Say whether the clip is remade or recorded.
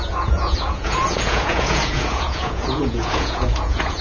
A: remade